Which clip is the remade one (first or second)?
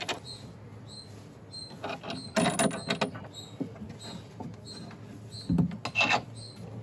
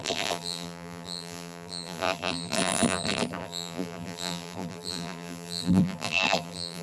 second